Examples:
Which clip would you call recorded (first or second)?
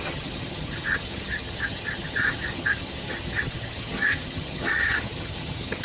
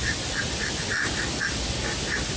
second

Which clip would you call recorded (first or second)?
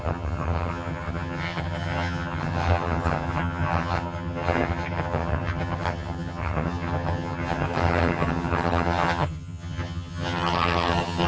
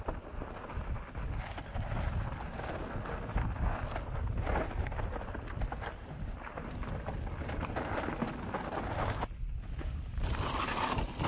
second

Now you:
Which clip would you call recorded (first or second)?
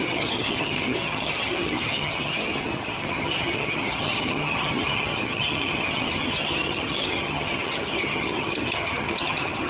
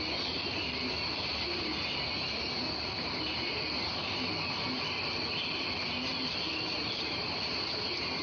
second